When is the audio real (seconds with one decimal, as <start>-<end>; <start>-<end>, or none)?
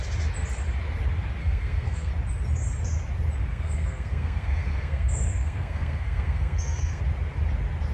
0.0-1.4; 2.1-3.5; 7.0-7.9